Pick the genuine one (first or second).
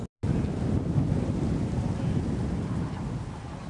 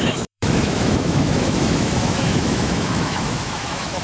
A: first